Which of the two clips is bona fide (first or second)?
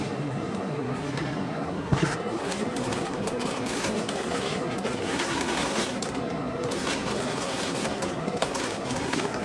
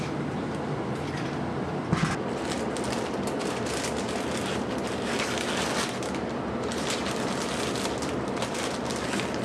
second